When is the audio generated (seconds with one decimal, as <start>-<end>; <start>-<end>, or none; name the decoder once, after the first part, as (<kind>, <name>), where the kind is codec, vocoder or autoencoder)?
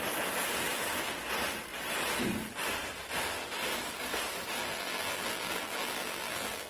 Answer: 4.6-6.7 (vocoder, BigVGAN v2)